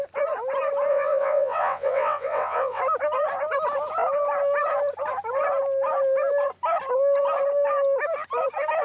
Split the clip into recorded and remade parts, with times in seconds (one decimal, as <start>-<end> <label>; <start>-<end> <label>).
0.0-0.9 recorded; 0.9-2.8 remade; 2.8-8.8 recorded